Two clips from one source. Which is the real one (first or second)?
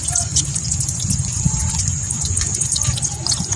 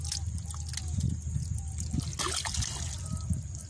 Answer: second